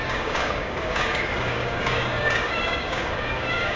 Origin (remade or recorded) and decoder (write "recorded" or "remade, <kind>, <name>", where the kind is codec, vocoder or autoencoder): remade, codec, DAC